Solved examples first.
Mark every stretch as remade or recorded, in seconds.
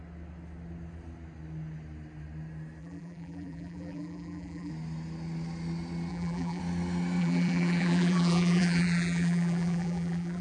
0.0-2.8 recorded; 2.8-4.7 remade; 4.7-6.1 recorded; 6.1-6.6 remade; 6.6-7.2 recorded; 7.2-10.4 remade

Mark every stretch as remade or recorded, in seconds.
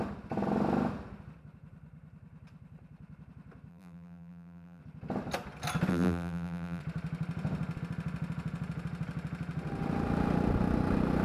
0.0-3.7 recorded; 3.7-4.8 remade; 4.8-5.9 recorded; 5.9-6.8 remade; 6.8-11.2 recorded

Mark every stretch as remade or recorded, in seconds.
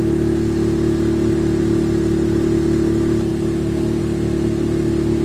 0.0-5.2 recorded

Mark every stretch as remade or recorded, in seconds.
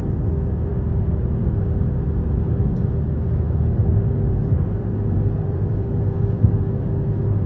0.0-3.9 recorded; 3.9-7.1 remade; 7.1-7.5 recorded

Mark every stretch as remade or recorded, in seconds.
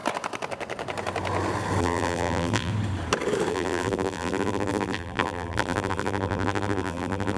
0.0-1.8 recorded; 1.8-2.7 remade; 2.7-3.5 recorded; 3.5-7.4 remade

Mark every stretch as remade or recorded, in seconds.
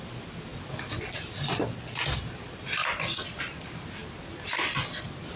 0.0-2.8 remade; 2.8-3.4 recorded; 3.4-4.0 remade; 4.0-4.9 recorded; 4.9-5.4 remade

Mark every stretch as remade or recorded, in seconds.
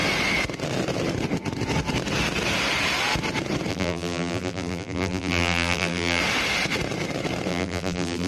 0.0-3.7 recorded; 3.7-6.2 remade; 6.2-7.5 recorded; 7.5-8.3 remade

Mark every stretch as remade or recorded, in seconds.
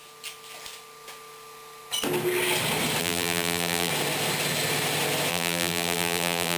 0.0-3.0 recorded; 3.0-3.9 remade; 3.9-5.3 recorded; 5.3-6.6 remade